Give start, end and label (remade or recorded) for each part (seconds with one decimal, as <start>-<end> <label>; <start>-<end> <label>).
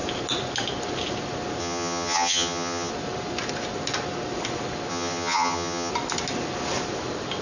0.0-1.6 recorded; 1.6-2.9 remade; 2.9-4.9 recorded; 4.9-5.9 remade; 5.9-7.4 recorded